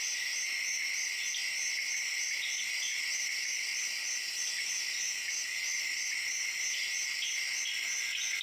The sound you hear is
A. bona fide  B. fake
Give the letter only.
A